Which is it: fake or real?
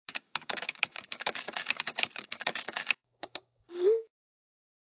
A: fake